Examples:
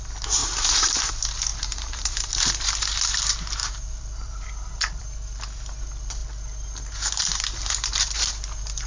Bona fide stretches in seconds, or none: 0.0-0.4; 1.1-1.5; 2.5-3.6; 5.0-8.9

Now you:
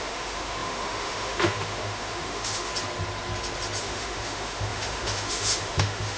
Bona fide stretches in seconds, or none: 2.7-3.8

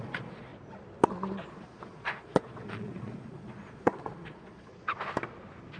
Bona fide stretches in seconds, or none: 0.5-1.5; 4.7-5.8

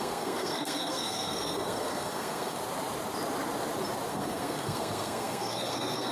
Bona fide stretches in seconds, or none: 2.6-4.1

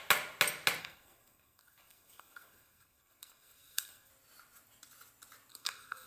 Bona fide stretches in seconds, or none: 0.0-0.8; 4.1-5.5

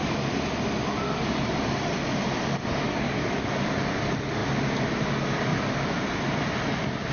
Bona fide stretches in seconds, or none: 0.0-5.5